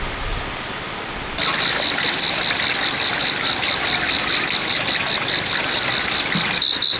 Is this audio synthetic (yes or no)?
yes